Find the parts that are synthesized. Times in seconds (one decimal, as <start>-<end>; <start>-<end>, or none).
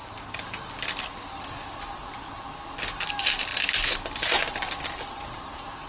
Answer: none